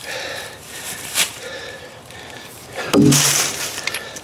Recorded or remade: remade